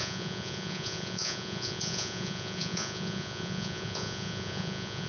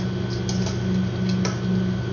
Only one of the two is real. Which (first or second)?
second